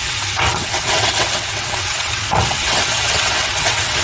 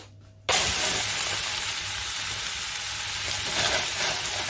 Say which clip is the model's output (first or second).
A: first